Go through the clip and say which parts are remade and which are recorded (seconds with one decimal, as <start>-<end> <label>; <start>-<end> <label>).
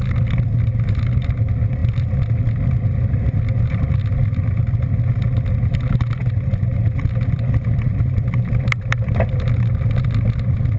0.0-10.8 recorded